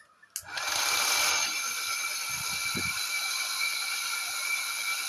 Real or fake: real